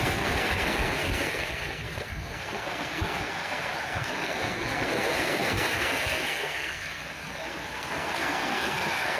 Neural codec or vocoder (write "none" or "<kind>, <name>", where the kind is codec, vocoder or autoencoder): codec, SNAC